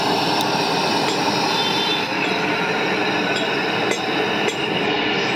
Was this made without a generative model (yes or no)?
yes